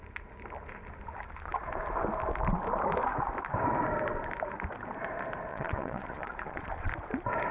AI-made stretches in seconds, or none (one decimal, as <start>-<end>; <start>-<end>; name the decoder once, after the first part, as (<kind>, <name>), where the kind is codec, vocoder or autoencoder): 5.5-6.9 (vocoder, Vocos)